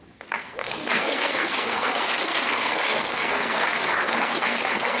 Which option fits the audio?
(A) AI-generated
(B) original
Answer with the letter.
A